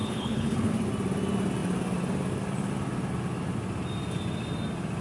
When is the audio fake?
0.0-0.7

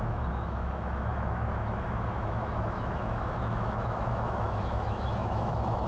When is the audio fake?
0.0-5.9

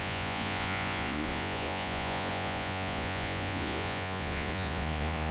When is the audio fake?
0.0-5.3

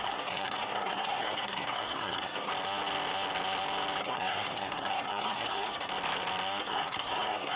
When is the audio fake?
0.0-2.5; 4.0-5.9; 6.6-7.6

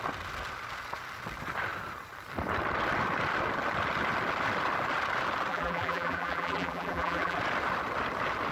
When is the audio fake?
5.5-7.4